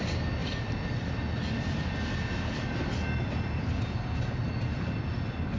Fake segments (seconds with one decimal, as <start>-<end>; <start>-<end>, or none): none